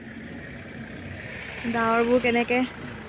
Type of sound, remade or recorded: recorded